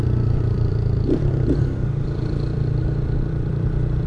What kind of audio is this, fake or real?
fake